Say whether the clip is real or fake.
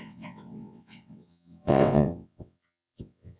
fake